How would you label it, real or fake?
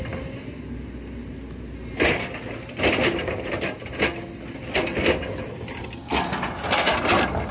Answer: real